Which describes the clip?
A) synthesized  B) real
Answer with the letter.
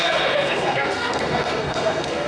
A